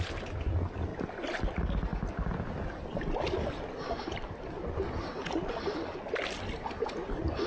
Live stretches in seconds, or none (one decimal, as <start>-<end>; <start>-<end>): 0.0-7.5